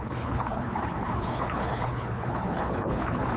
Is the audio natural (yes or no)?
no